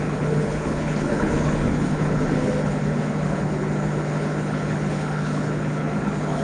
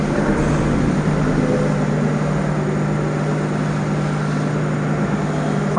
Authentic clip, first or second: second